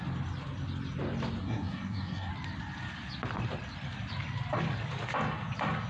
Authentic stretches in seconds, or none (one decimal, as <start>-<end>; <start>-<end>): 0.0-1.4; 2.3-5.9